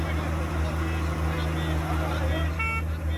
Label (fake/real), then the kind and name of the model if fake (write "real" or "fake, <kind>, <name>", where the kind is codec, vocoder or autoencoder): real